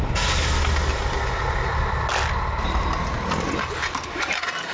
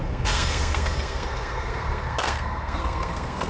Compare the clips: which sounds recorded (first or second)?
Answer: first